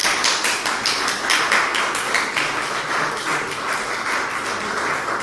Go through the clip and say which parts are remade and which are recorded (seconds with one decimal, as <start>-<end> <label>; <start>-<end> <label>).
0.0-0.7 remade; 0.7-5.2 recorded